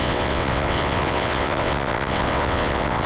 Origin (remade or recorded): remade